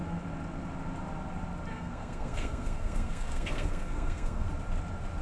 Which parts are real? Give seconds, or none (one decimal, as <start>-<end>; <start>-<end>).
0.0-1.7; 4.5-5.2